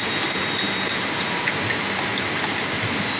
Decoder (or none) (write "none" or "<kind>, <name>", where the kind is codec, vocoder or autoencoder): none